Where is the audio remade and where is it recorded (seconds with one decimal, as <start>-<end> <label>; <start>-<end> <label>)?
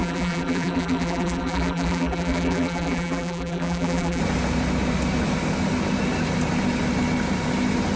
0.0-4.2 remade; 4.2-8.0 recorded